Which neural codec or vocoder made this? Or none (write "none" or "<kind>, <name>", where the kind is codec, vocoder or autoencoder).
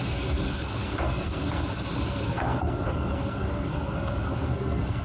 codec, SNAC